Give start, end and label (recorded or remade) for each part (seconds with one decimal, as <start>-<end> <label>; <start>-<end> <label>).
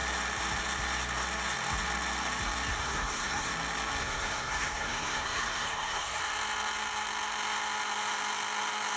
0.0-2.7 recorded; 2.7-3.5 remade; 3.5-4.0 recorded; 4.0-6.2 remade; 6.2-9.0 recorded